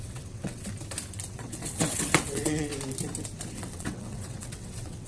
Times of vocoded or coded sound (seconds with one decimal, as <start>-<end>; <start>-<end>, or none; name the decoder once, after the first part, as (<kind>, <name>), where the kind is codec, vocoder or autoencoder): 0.0-0.7 (vocoder, WaveNeXt); 1.3-2.7; 3.5-5.1